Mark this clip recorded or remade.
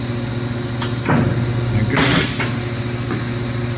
recorded